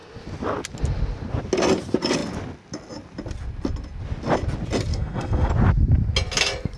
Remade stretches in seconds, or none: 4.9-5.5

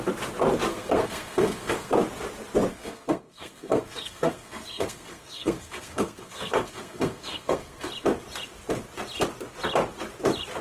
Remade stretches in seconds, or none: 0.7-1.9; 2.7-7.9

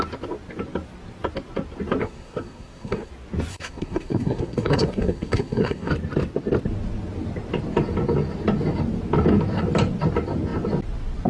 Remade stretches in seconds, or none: 2.0-3.1; 3.5-5.9

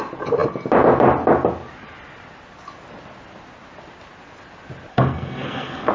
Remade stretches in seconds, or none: 4.9-5.9